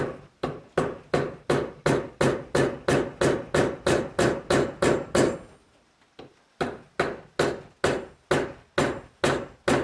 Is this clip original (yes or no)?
yes